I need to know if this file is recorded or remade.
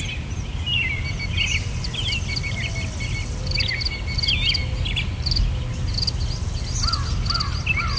recorded